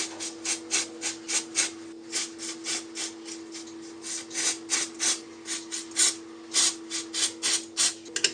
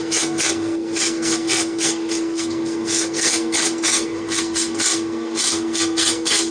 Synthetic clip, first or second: second